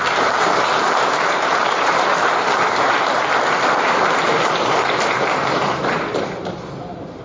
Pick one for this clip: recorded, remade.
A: remade